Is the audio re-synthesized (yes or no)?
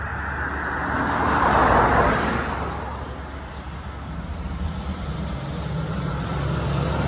no